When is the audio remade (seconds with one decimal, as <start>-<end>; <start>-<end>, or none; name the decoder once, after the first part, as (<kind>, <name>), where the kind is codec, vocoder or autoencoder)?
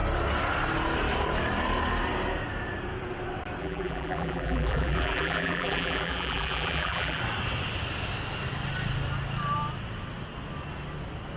3.6-7.2 (vocoder, BigVGAN v2)